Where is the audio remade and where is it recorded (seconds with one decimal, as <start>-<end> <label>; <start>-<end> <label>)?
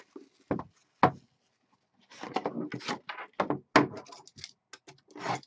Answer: 0.0-5.5 recorded